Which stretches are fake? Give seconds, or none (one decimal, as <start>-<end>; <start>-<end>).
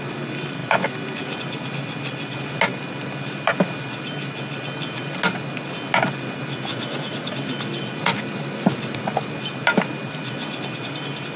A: 6.7-7.3